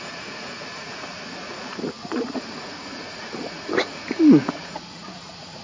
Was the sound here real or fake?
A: fake